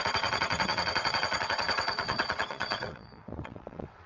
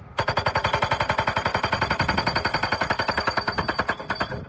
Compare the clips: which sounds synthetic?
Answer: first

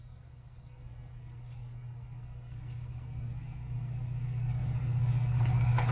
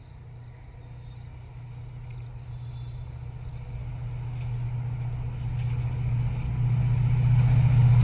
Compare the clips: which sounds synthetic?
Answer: first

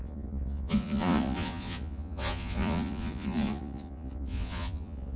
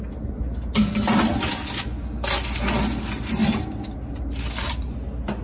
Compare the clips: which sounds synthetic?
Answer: first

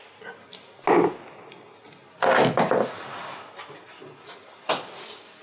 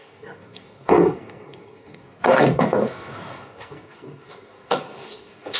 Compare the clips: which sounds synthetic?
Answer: second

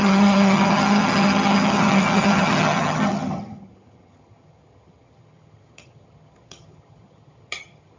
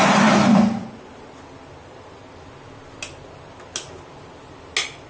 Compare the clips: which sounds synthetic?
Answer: first